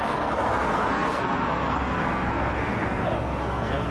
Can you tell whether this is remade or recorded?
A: remade